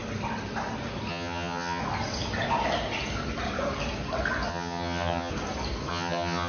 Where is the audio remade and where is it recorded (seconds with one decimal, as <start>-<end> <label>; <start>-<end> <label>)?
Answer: 0.0-1.1 recorded; 1.1-1.8 remade; 1.8-4.5 recorded; 4.5-5.3 remade; 5.3-5.9 recorded; 5.9-6.5 remade